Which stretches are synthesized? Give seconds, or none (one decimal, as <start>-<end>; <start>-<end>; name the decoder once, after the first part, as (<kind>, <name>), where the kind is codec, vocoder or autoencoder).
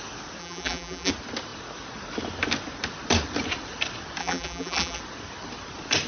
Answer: 0.4-1.1 (vocoder, BigVGAN v2); 4.2-5.0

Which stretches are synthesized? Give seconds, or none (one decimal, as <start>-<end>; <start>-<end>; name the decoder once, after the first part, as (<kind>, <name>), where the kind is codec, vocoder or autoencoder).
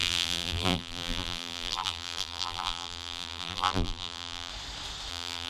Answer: 0.0-4.5 (vocoder, BigVGAN v2); 5.1-5.5